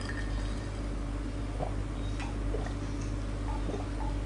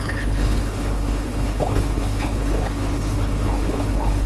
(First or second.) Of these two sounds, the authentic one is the first